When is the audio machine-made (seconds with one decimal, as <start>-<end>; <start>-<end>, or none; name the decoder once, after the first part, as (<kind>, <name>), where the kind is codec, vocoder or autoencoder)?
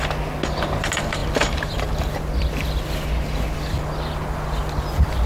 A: 1.2-1.9 (vocoder, BigVGAN v2)